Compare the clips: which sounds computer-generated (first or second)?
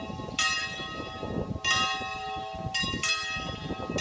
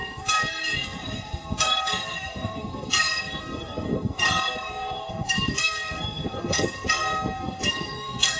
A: second